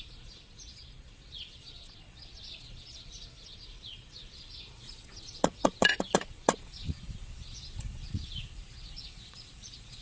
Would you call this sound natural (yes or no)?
no